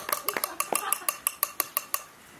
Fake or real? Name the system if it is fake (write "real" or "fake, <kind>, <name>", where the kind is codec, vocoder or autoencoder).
real